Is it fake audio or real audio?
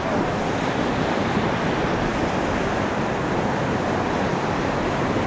real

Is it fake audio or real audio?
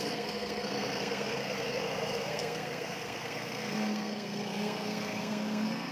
fake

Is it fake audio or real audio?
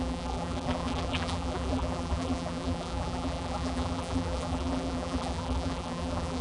fake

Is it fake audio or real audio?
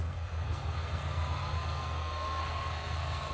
fake